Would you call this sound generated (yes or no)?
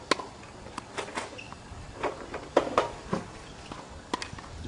no